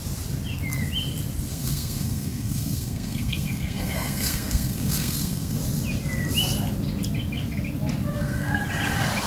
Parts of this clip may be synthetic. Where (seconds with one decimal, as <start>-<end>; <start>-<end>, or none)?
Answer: 1.5-5.6; 8.1-8.6